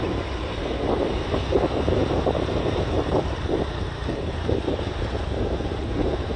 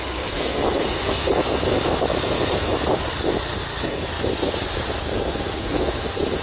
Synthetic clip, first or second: first